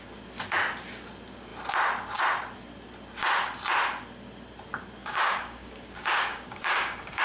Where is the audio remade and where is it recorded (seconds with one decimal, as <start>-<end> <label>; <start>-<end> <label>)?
0.0-5.0 recorded; 5.0-7.2 remade